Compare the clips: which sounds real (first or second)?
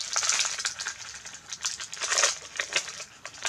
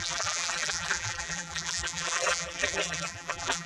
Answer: first